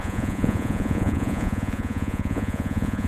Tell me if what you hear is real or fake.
fake